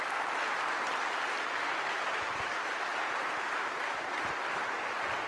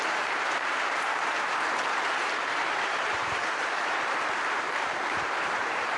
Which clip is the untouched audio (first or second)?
first